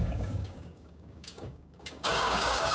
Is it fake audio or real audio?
fake